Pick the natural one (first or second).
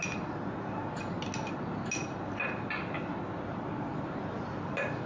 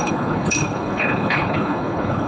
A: first